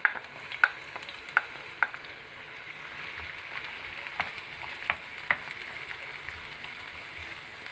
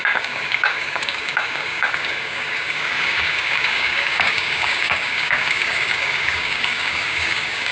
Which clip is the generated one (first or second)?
second